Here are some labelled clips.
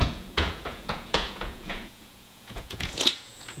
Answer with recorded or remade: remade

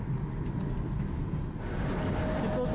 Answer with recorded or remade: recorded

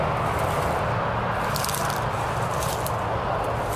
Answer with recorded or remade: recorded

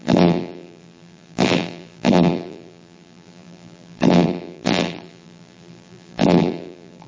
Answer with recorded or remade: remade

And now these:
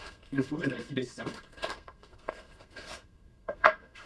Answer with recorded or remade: remade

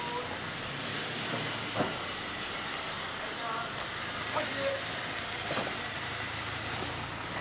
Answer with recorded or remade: recorded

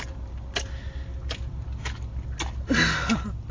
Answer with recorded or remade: recorded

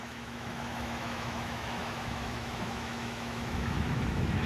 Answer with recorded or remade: remade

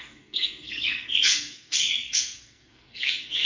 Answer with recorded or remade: remade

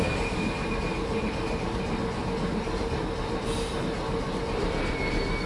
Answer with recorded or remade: recorded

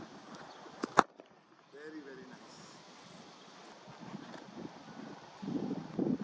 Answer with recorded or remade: recorded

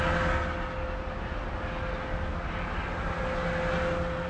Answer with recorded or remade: recorded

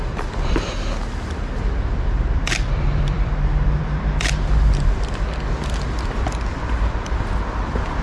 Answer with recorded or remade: remade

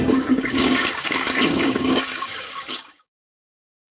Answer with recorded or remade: remade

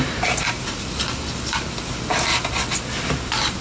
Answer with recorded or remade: recorded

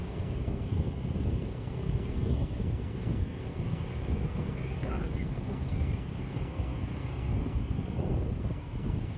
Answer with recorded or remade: remade